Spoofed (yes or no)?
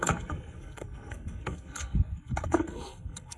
yes